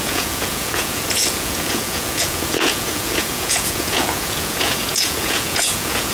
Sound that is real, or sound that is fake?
fake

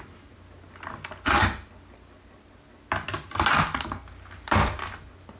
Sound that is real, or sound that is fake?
real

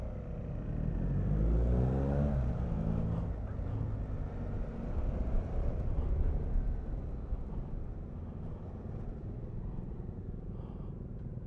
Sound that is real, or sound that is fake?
real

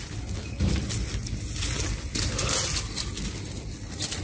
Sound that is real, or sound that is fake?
real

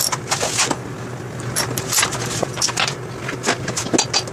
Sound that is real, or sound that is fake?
real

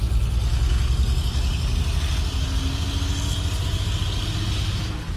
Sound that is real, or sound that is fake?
real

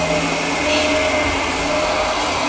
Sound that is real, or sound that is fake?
real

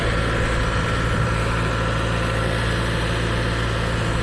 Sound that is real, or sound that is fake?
real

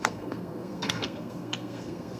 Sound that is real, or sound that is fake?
fake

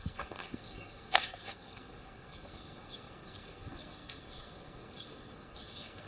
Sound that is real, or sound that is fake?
fake